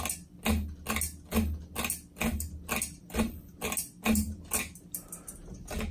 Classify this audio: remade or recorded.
recorded